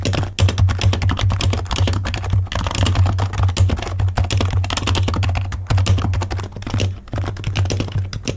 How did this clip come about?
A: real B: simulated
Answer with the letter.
A